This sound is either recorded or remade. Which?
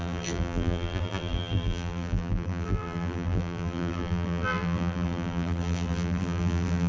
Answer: remade